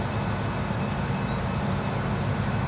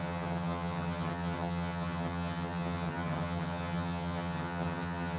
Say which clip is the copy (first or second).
second